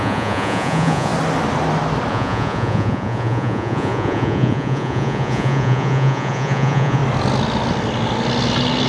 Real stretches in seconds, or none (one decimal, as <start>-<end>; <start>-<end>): 1.1-2.1; 7.0-8.9